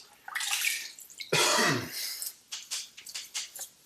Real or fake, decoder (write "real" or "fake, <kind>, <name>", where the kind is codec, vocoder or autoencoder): real